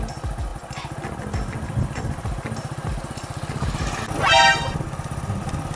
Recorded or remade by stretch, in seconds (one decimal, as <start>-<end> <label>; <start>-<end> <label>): 0.0-5.8 recorded